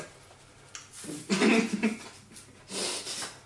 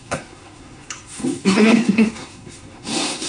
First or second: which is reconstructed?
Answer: second